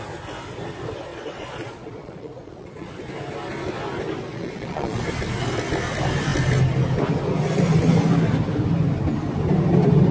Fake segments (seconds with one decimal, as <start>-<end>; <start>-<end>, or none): 1.1-2.9; 4.3-5.0